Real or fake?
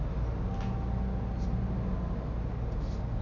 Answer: real